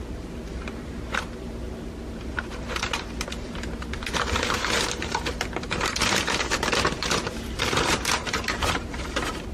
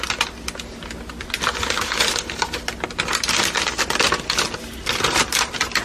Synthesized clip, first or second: first